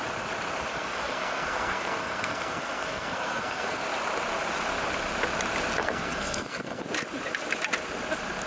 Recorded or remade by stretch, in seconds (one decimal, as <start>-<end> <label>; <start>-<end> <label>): 0.0-0.7 recorded; 0.7-3.8 remade; 3.8-5.8 recorded; 5.8-6.8 remade; 6.8-8.5 recorded